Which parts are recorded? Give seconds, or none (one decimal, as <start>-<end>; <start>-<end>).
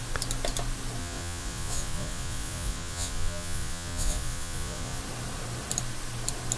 0.0-1.0; 5.0-6.6